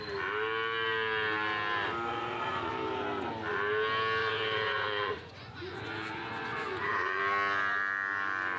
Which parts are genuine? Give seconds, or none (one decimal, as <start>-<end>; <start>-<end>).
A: 0.0-2.1; 2.7-4.2; 7.2-8.6